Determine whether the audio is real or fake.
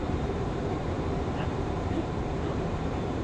fake